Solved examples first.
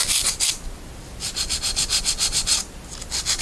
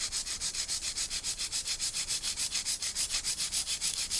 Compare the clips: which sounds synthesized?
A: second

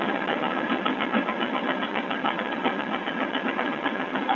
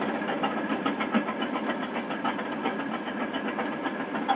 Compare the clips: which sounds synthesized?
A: first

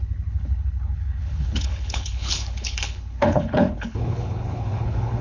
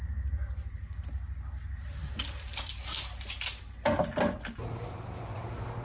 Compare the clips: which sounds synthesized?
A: first